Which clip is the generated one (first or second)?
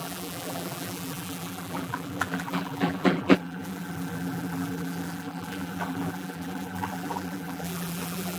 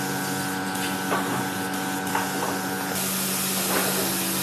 first